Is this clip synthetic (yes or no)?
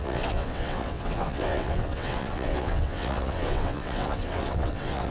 yes